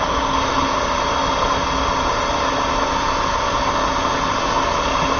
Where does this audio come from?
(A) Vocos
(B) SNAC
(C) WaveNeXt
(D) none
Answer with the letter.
D